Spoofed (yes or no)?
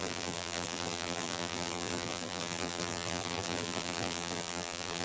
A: yes